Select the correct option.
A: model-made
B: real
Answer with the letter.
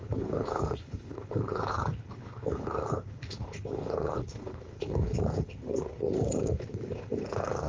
A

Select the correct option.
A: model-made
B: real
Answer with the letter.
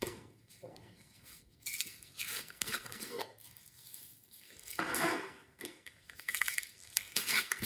A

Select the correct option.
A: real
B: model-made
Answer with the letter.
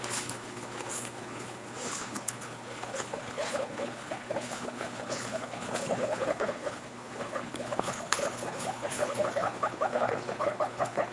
B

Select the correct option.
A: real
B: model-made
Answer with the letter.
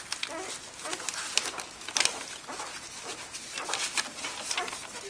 A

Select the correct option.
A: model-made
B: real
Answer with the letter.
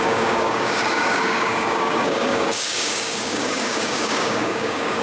A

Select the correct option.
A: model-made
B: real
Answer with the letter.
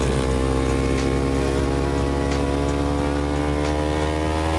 B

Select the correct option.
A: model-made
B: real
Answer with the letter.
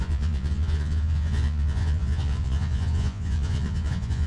A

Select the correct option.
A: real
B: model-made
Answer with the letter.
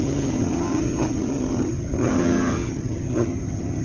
B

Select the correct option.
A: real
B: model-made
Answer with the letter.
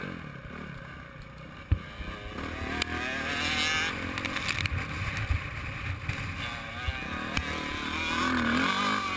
A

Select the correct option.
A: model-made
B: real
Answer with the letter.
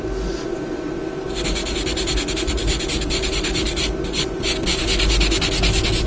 B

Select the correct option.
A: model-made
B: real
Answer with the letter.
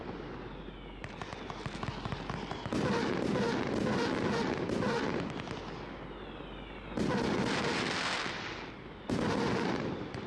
B